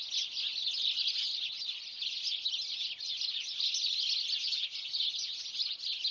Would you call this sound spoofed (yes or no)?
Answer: no